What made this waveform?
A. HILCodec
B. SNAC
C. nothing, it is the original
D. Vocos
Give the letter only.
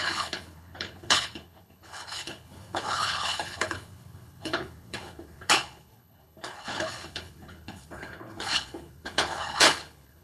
A